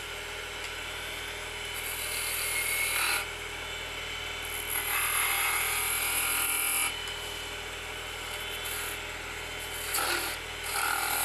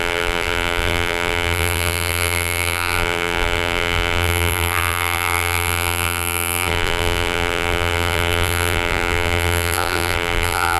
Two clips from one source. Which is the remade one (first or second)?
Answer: second